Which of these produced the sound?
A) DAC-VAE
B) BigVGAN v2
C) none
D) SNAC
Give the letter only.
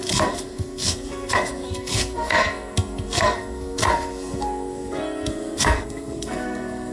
D